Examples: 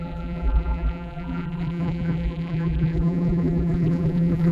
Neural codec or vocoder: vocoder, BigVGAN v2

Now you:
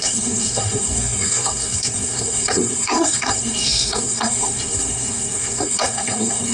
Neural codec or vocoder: codec, SNAC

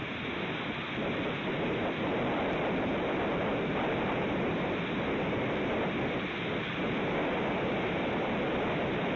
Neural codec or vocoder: none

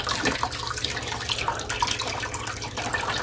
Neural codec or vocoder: none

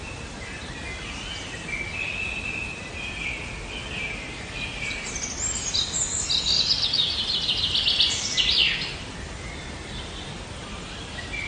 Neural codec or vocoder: none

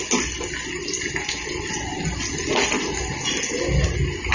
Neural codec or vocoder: none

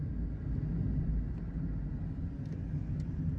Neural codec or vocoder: none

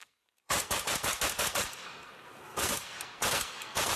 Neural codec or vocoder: codec, SNAC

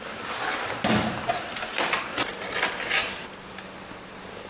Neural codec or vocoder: none